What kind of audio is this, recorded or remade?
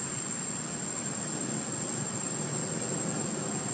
recorded